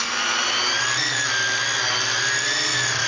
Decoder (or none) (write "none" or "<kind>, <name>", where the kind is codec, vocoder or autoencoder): none